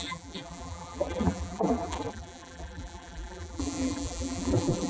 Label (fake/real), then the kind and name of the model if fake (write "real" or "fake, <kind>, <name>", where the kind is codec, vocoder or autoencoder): fake, vocoder, BigVGAN v2